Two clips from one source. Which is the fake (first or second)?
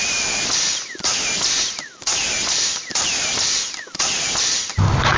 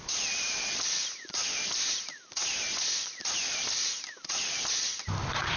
second